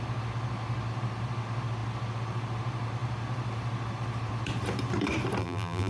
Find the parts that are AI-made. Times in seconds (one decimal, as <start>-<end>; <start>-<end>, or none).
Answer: 5.4-5.9